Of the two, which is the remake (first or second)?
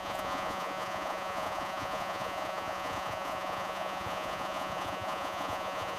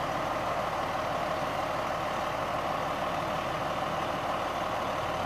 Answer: first